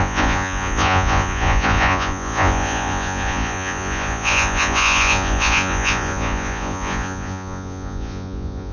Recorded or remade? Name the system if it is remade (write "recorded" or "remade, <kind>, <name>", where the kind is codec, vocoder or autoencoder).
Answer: remade, vocoder, Vocos